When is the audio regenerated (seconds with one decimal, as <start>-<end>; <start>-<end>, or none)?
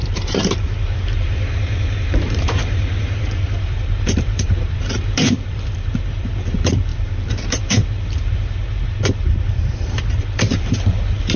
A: 0.0-11.4